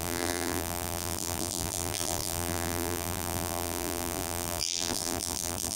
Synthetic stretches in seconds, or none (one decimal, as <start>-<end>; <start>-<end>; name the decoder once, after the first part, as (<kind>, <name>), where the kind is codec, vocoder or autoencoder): 0.0-5.8 (vocoder, BigVGAN v2)